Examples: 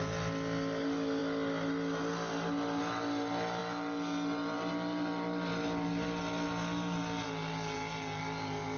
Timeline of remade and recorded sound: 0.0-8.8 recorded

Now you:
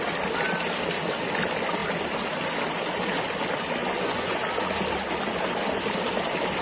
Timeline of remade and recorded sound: 0.0-3.8 recorded; 3.8-4.4 remade; 4.4-6.6 recorded

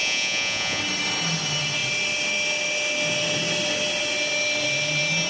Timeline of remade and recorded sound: 0.0-0.8 remade; 0.8-5.3 recorded

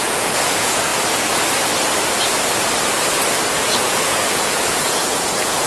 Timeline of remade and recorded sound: 0.0-0.9 remade; 0.9-3.6 recorded; 3.6-5.7 remade